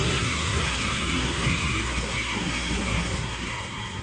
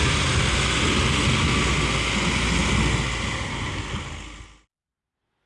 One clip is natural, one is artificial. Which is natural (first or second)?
second